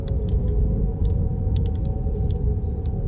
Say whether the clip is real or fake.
real